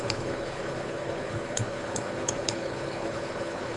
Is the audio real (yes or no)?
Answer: no